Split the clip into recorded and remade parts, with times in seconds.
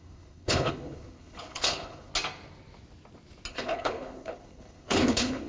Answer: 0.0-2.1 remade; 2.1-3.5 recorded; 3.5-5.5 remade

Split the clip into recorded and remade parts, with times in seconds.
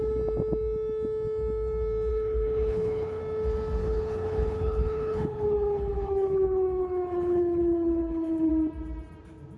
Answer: 0.0-2.1 recorded; 2.1-3.2 remade; 3.2-3.8 recorded; 3.8-8.5 remade; 8.5-9.6 recorded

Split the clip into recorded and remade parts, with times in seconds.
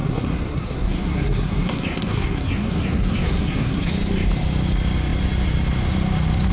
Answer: 0.0-3.9 remade; 3.9-6.5 recorded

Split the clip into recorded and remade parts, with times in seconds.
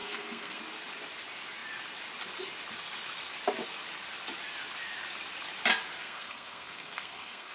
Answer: 0.0-0.6 remade; 0.6-6.0 recorded; 6.0-7.5 remade